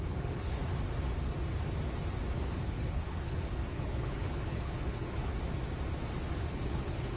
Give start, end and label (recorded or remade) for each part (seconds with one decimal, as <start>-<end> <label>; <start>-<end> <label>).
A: 0.0-0.6 remade; 0.6-2.4 recorded; 2.4-5.3 remade; 5.3-6.5 recorded; 6.5-7.2 remade